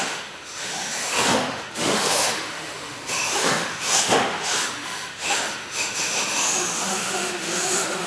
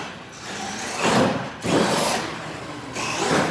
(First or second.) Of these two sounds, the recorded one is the second